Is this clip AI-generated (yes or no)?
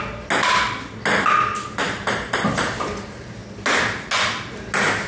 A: no